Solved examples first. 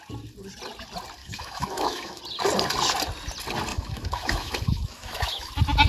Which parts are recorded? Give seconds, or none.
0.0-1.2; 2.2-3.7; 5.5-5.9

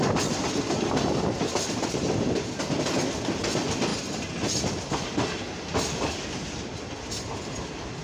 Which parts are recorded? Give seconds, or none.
0.0-8.0

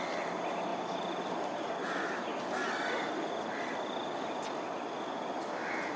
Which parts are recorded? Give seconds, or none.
0.0-6.0